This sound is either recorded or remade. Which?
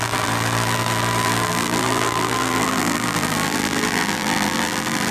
remade